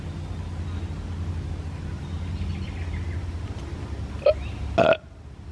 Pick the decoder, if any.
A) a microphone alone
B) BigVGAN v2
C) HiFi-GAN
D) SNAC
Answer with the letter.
A